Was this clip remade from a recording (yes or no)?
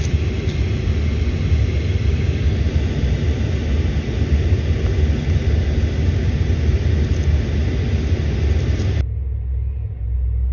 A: no